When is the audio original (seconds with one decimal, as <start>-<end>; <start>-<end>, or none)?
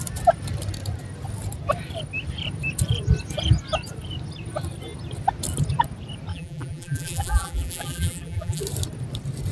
0.0-6.3; 8.6-9.5